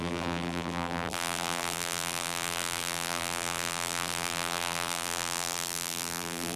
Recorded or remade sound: remade